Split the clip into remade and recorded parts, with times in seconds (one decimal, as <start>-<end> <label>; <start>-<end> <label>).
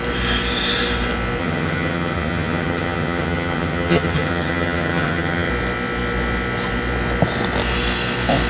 0.0-1.4 recorded; 1.4-5.5 remade; 5.5-8.5 recorded